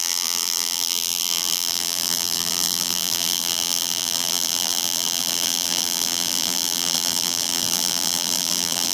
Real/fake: fake